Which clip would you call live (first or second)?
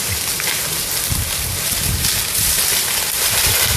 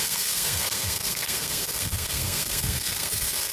first